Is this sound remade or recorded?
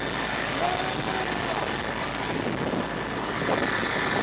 recorded